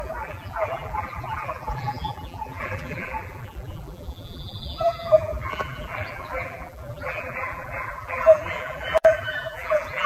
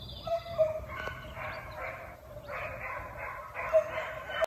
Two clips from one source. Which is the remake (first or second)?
first